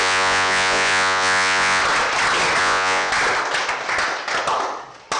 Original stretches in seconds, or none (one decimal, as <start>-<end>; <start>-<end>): 1.8-2.6; 3.1-5.2